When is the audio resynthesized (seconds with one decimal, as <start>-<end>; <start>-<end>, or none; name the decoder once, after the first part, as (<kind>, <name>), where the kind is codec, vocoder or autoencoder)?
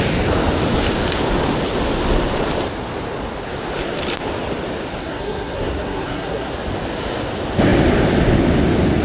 4.9-6.5 (codec, SNAC)